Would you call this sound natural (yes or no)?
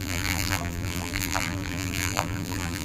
no